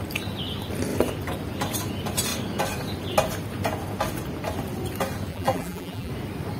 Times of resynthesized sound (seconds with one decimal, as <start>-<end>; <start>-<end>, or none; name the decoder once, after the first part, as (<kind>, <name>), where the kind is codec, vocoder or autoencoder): 5.3-6.1 (vocoder, BigVGAN v2)